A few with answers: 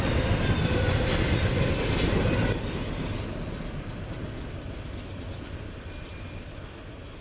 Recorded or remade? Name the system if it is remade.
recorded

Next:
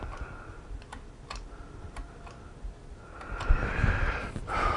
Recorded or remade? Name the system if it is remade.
recorded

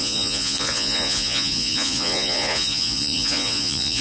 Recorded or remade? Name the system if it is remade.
remade, vocoder, Vocos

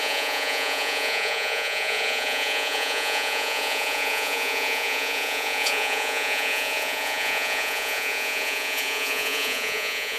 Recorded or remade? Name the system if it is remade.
remade, vocoder, Vocos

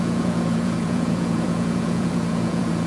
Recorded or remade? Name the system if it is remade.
remade, vocoder, Vocos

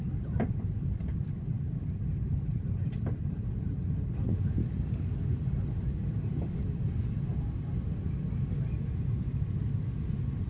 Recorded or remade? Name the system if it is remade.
recorded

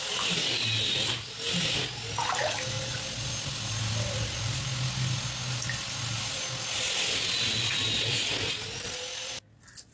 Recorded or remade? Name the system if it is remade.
recorded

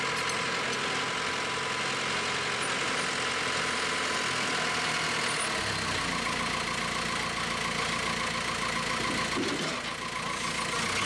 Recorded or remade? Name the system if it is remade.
recorded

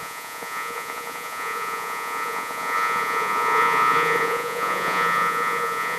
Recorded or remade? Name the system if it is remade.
remade, vocoder, Vocos